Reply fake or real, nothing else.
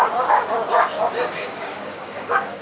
fake